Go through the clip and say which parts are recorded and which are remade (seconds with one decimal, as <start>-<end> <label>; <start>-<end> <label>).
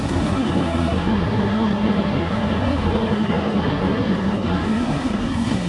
0.0-5.7 remade